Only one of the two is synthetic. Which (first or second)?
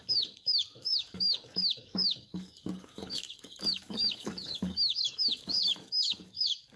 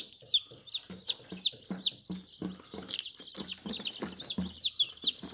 first